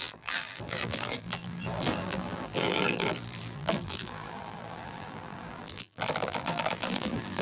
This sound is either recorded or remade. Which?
remade